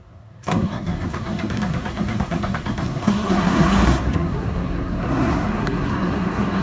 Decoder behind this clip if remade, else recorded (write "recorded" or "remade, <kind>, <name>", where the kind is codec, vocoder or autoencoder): remade, codec, SNAC